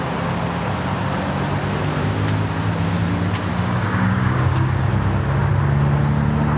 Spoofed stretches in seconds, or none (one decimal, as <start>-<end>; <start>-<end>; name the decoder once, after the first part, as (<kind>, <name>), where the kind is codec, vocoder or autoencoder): 3.5-4.9 (codec, DAC)